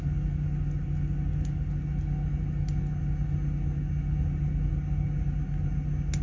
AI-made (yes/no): no